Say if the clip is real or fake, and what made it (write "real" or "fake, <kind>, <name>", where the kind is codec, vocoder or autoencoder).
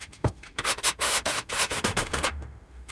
fake, autoencoder, DAC-VAE